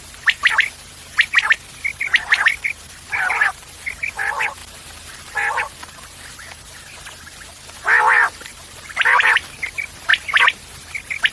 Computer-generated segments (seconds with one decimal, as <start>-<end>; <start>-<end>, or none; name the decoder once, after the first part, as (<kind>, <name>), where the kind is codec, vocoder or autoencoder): 4.6-5.6 (vocoder, BigVGAN v2); 8.5-9.7

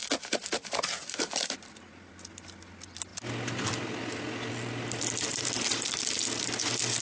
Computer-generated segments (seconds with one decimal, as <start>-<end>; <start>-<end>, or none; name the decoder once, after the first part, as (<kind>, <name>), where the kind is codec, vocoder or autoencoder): none

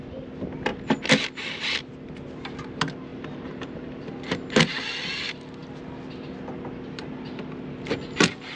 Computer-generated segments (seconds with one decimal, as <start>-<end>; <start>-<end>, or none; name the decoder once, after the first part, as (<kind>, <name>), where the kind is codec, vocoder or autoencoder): 3.1-4.1 (vocoder, BigVGAN v2)